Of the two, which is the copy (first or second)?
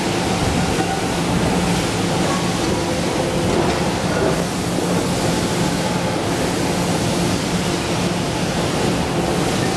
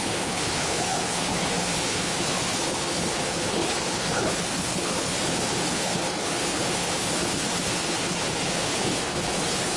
second